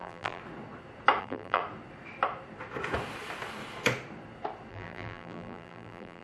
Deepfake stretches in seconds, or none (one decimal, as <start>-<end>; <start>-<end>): 0.0-0.4; 1.2-1.6; 4.7-6.2